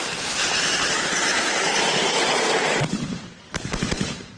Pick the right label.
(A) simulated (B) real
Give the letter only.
A